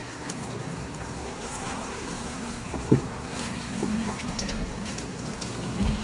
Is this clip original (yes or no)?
no